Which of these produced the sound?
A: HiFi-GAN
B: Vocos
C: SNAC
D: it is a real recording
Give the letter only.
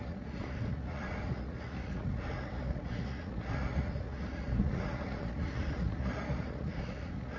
B